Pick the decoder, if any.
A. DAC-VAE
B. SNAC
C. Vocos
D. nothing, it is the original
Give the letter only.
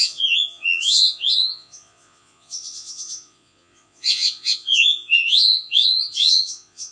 C